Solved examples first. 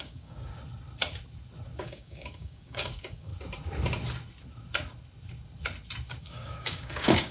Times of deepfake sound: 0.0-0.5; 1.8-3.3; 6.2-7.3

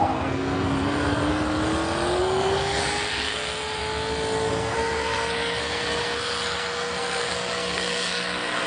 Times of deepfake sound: 0.0-1.3; 2.2-3.8; 4.5-8.7

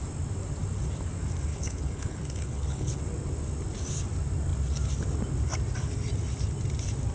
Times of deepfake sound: 1.5-3.0

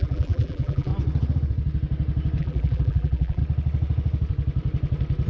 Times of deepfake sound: 0.0-0.9; 2.4-3.4

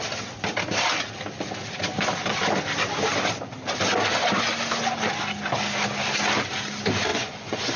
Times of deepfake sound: 7.1-7.8

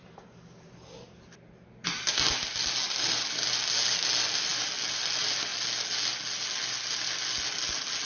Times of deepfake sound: none

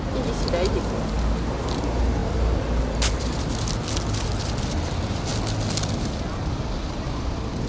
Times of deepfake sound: none

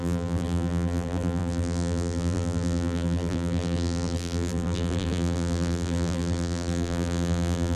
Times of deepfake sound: 0.0-7.8